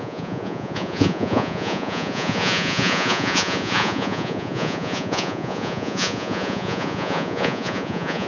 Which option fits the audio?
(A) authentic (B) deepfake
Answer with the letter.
B